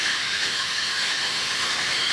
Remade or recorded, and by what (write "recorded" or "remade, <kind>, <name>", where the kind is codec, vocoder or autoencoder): remade, autoencoder, DAC-VAE